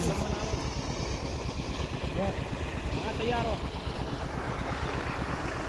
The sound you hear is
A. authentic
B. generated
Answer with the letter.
A